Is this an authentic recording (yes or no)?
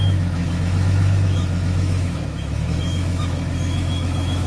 no